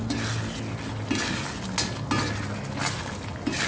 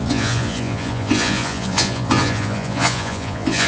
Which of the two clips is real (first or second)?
first